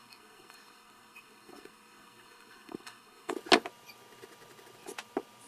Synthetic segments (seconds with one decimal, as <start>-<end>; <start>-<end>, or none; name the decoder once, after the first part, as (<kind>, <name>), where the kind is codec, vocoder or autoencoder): 0.0-3.3 (codec, SNAC)